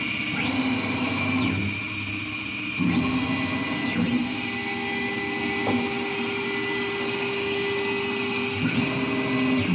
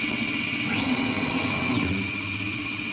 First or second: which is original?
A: first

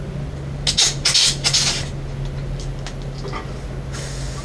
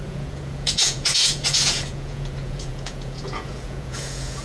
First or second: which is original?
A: first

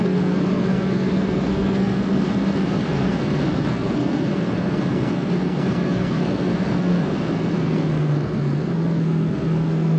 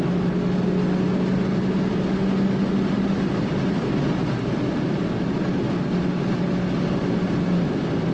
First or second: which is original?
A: second